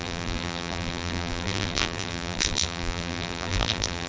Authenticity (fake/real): fake